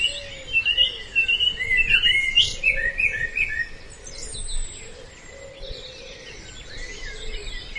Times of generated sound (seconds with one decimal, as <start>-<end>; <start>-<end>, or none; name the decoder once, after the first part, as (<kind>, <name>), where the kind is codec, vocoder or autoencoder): 5.5-6.3 (vocoder, BigVGAN v2)